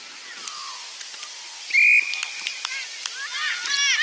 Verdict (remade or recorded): recorded